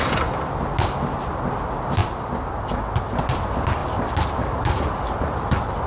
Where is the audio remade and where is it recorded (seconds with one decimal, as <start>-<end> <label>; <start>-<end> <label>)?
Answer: 0.0-5.9 recorded